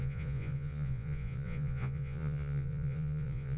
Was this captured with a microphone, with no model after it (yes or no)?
no